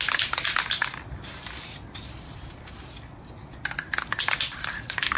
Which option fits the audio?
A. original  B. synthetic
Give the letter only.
A